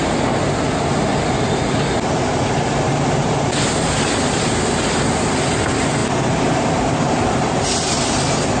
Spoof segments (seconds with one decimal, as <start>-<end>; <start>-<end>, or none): none